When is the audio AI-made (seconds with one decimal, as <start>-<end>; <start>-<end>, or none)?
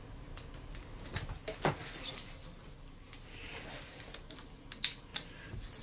none